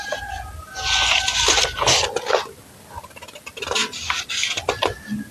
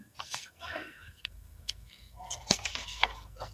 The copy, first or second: second